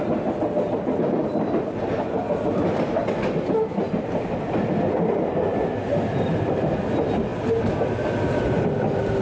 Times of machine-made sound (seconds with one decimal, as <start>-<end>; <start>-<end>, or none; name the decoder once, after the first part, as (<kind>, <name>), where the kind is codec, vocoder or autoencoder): none